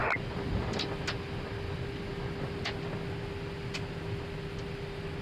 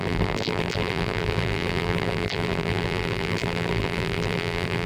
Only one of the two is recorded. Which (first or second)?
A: first